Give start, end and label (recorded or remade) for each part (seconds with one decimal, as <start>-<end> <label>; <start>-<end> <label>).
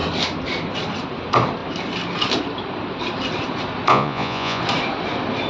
0.0-3.9 recorded; 3.9-4.6 remade; 4.6-5.5 recorded